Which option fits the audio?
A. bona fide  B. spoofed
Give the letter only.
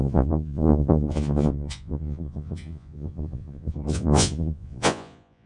B